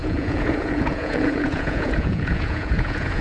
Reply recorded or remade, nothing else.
remade